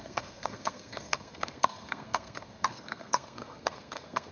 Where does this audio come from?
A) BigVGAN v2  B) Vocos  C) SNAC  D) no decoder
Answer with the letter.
C